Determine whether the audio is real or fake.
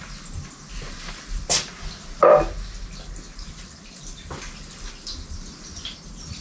real